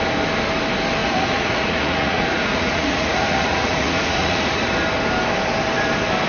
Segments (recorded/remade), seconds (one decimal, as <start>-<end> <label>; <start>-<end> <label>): 0.0-1.0 recorded; 1.0-4.6 remade; 4.6-6.3 recorded